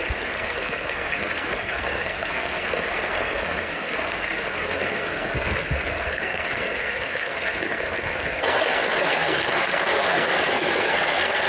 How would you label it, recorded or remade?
remade